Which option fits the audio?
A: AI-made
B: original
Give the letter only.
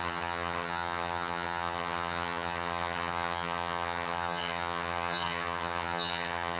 A